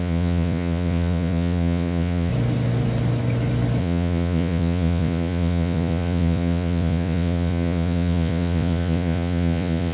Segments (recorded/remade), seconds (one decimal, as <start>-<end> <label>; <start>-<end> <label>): 0.0-2.3 remade; 2.3-3.8 recorded; 3.8-9.9 remade